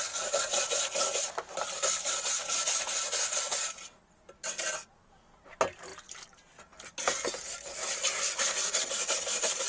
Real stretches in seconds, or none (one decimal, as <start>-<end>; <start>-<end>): 0.0-9.7